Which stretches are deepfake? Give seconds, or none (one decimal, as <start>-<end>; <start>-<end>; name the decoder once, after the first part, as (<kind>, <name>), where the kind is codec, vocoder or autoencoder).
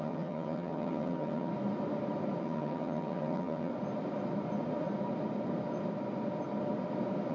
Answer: 0.0-1.5 (vocoder, HiFi-GAN); 2.4-3.7